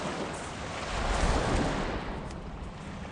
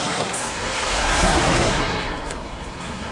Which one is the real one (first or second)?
first